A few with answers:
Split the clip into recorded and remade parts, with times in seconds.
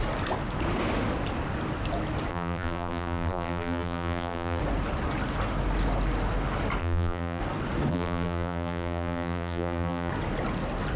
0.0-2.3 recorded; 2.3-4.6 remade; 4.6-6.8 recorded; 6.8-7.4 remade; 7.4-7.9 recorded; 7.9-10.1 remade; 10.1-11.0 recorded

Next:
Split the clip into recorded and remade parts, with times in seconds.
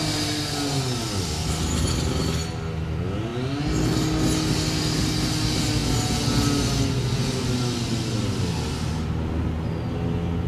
0.0-10.5 recorded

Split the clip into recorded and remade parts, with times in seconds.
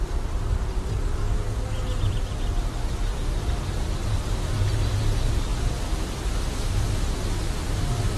0.0-1.2 remade; 1.2-2.1 recorded; 2.1-5.5 remade; 5.5-7.0 recorded; 7.0-8.2 remade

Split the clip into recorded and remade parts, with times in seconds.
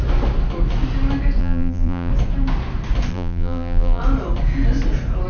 0.0-1.4 recorded; 1.4-2.1 remade; 2.1-3.1 recorded; 3.1-4.0 remade; 4.0-5.3 recorded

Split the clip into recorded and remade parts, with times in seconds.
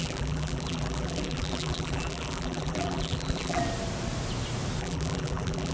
0.0-3.6 remade; 3.6-4.8 recorded; 4.8-5.7 remade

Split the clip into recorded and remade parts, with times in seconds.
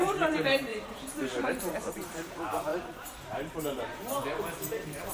0.0-5.1 remade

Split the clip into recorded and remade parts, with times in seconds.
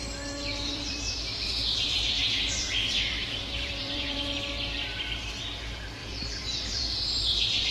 0.0-0.5 recorded; 0.5-4.5 remade; 4.5-6.0 recorded; 6.0-7.0 remade; 7.0-7.7 recorded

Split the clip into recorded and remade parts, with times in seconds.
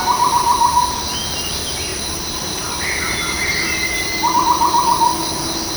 0.0-1.9 recorded; 1.9-4.0 remade; 4.0-5.8 recorded